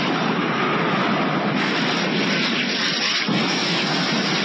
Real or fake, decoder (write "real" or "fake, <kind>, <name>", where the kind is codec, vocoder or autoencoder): real